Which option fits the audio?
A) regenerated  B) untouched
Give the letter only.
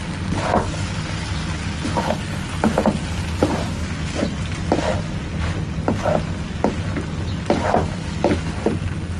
B